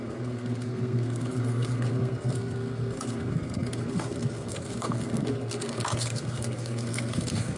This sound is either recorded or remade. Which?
remade